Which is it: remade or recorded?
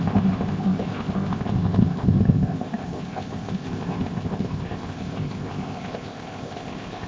remade